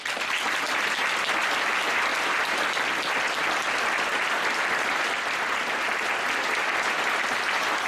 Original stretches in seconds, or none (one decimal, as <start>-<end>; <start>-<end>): 0.0-2.1; 2.7-7.9